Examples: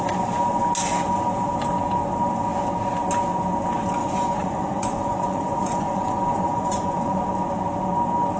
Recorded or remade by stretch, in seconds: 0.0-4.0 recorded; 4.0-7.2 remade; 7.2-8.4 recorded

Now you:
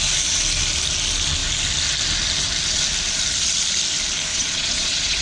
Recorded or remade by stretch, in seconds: 0.0-4.3 recorded; 4.3-5.2 remade

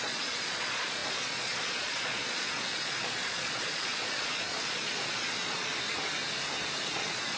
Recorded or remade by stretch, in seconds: 0.0-5.7 remade; 5.7-6.8 recorded; 6.8-7.4 remade

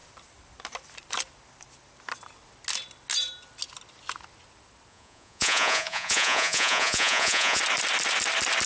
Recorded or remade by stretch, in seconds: 0.0-4.9 recorded; 4.9-7.6 remade; 7.6-8.7 recorded